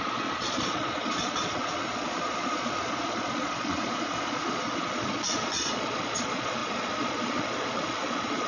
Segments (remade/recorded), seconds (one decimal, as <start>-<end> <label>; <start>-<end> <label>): 0.0-8.5 remade